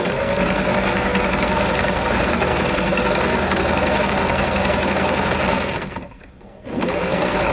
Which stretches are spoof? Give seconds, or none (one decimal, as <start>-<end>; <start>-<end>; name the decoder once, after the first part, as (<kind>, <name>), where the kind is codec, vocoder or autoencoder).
0.0-7.5 (codec, SNAC)